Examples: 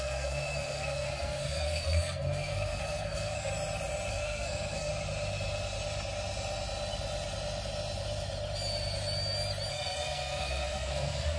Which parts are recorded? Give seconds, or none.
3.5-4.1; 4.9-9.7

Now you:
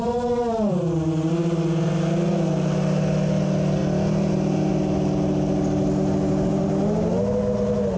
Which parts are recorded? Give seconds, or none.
0.0-8.0

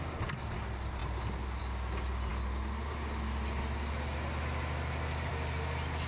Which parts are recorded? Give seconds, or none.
0.0-6.1

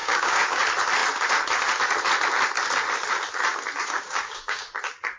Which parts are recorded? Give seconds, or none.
0.6-3.8; 4.7-5.2

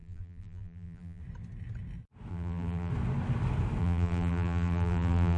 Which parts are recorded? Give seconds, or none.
1.2-2.3; 2.9-3.8

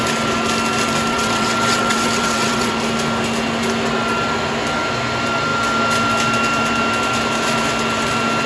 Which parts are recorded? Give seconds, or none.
0.0-1.1; 2.7-8.5

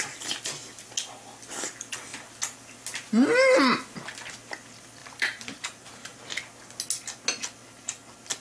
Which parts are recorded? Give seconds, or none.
0.0-5.0; 6.2-8.4